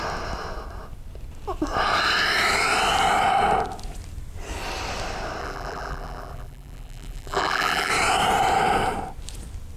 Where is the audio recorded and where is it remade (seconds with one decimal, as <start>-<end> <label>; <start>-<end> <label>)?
0.0-5.4 recorded; 5.4-7.9 remade; 7.9-9.8 recorded